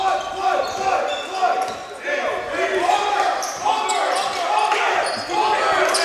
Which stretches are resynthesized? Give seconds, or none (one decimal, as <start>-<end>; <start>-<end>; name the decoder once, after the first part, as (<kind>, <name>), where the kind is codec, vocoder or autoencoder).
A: 1.8-3.7 (vocoder, BigVGAN v2)